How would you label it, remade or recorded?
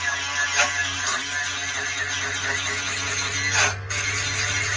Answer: recorded